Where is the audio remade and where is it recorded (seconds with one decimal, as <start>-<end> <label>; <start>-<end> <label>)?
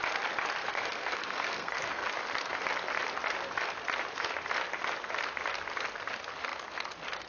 0.0-0.6 recorded; 0.6-2.1 remade; 2.1-7.3 recorded